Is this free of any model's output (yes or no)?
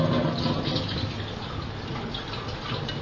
yes